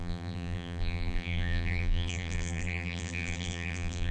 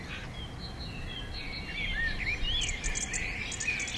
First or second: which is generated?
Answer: first